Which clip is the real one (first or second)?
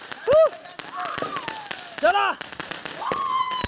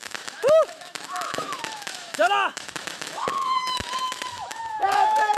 first